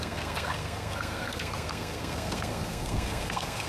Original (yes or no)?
no